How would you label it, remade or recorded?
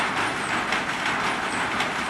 recorded